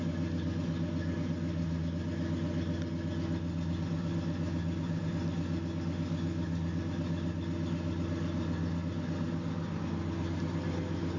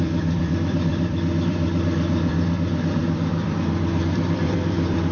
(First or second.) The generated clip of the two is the second